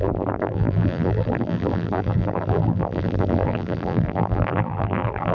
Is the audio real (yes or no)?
no